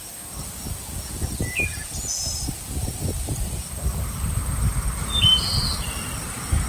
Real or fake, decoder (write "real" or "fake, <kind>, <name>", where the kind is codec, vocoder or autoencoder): fake, vocoder, BigVGAN v2